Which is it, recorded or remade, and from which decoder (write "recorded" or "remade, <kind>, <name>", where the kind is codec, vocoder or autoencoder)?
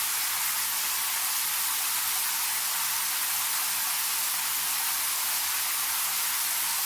recorded